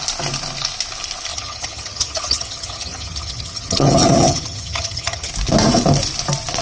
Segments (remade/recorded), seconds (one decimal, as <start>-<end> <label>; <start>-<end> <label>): 0.0-1.3 recorded; 1.3-5.3 remade; 5.3-6.6 recorded